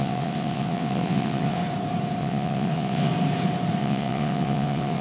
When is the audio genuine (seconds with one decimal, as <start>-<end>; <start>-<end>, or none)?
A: 1.6-2.2; 3.1-3.8